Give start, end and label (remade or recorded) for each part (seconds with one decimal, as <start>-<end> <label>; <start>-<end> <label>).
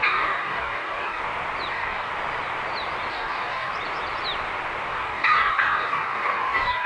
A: 0.0-1.2 remade; 1.2-1.7 recorded; 1.7-2.1 remade; 2.1-3.1 recorded; 3.1-3.7 remade; 3.7-4.9 recorded; 4.9-6.9 remade